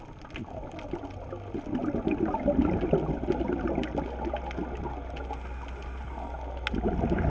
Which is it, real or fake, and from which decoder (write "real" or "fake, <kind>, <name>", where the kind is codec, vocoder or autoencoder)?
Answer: real